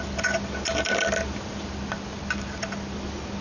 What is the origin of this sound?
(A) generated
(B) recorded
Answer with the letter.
B